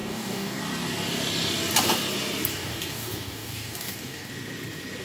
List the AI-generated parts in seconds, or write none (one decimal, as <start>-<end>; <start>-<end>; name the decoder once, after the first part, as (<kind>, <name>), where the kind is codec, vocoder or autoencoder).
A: 0.0-0.6 (codec, DAC); 2.5-4.3